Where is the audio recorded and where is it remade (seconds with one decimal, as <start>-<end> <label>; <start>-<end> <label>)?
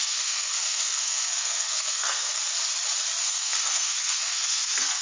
0.0-2.4 remade; 2.4-3.2 recorded; 3.2-5.0 remade